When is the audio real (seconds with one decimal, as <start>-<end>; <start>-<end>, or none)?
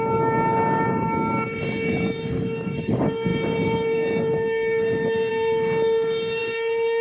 none